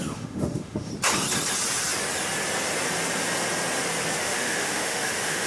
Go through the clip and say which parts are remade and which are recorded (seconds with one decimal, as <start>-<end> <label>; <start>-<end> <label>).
0.0-0.9 remade; 0.9-4.2 recorded; 4.2-5.5 remade